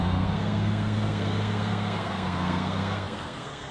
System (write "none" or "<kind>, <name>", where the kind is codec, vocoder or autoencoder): codec, SNAC